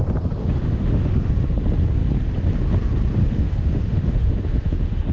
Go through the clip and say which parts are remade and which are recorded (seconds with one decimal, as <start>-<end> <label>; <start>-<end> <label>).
0.0-0.4 recorded; 0.4-1.3 remade; 1.3-3.2 recorded; 3.2-5.1 remade